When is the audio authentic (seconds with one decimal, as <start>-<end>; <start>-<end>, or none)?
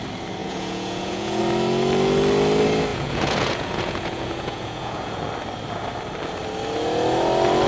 0.0-0.4; 1.4-2.9; 5.2-7.7